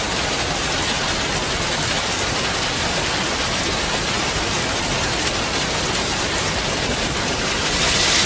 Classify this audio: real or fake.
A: real